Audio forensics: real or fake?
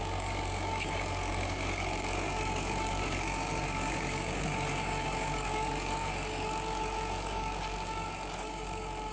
fake